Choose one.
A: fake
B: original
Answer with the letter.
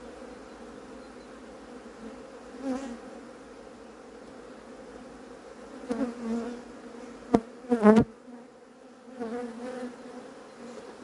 B